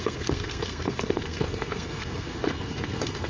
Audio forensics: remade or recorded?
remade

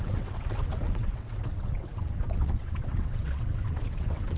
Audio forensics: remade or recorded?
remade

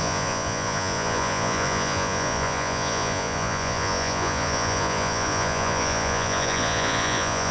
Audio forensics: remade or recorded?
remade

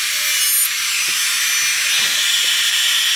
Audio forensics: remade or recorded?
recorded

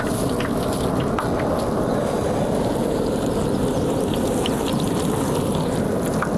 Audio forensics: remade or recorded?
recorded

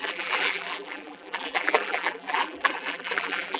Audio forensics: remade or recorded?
remade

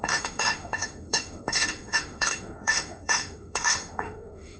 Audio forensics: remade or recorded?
remade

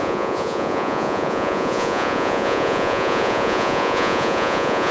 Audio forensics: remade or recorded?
remade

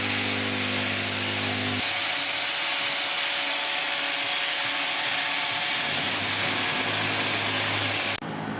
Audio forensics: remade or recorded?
recorded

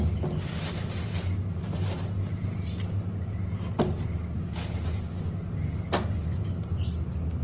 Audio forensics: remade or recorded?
recorded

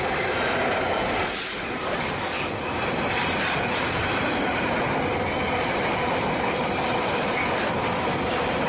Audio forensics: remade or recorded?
remade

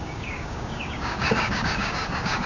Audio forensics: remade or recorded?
remade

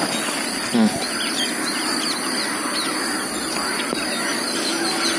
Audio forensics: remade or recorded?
recorded